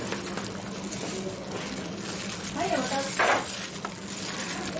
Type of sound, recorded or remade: recorded